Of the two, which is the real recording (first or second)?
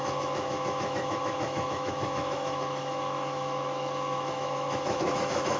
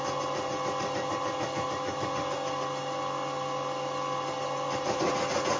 second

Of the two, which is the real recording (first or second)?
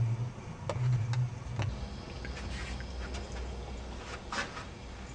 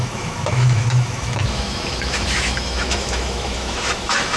first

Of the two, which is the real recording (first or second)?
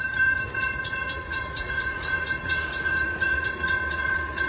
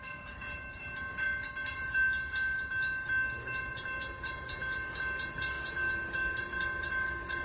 second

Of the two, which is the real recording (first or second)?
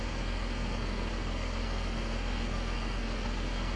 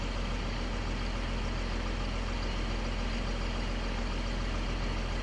second